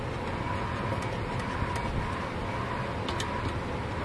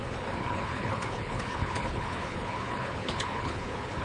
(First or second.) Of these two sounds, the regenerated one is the second